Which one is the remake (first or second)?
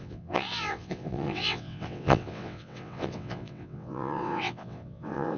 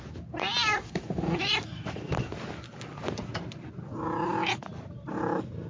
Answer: first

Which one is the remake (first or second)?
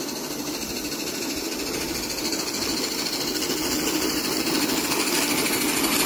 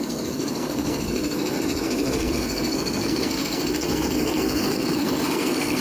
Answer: second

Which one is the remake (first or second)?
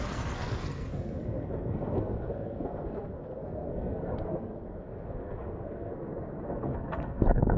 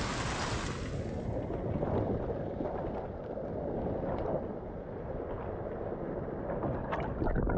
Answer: first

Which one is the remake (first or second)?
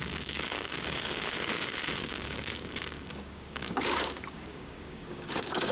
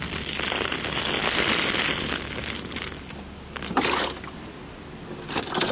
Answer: first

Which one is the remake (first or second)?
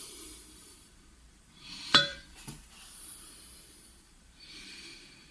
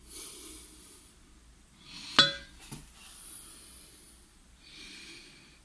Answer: first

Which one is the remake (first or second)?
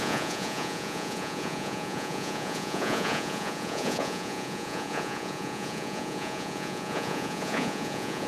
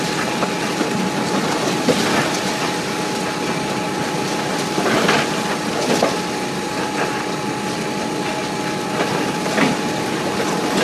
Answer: first